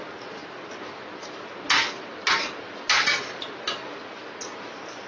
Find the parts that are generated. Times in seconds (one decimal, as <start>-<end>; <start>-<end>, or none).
none